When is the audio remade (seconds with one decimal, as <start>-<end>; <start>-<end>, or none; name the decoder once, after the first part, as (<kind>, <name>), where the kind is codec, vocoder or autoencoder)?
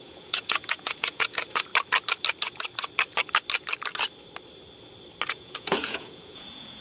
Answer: 0.0-1.7 (vocoder, Vocos); 5.3-6.8